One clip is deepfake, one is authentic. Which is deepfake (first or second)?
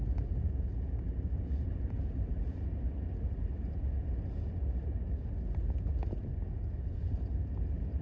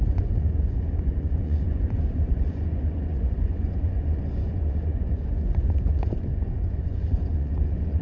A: second